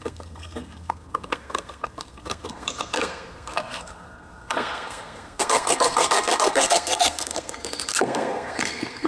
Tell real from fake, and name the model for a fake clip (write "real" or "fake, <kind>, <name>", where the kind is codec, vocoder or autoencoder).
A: fake, codec, SNAC